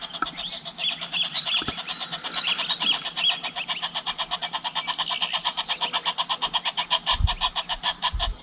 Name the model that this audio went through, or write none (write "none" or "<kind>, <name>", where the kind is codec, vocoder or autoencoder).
none